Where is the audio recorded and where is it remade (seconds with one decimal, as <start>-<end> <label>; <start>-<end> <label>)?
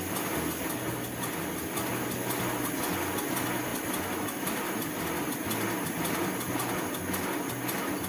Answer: 0.0-8.1 recorded